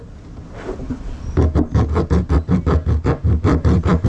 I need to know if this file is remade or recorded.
recorded